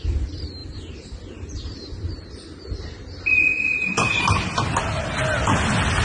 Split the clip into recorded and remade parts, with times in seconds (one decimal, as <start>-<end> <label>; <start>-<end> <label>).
0.0-0.6 recorded; 0.6-4.2 remade; 4.2-6.0 recorded